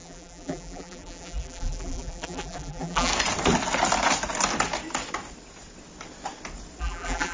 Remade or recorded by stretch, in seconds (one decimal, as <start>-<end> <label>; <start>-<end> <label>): 0.0-3.1 remade; 3.1-6.8 recorded; 6.8-7.3 remade